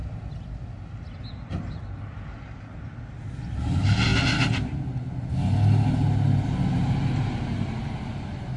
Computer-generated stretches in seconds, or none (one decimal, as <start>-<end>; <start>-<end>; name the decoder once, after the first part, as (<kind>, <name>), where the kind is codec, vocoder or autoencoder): none